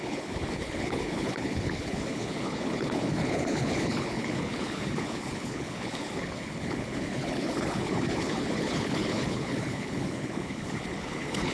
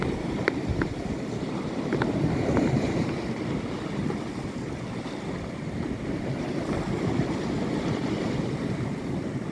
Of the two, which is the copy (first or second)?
first